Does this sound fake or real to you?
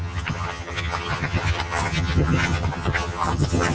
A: fake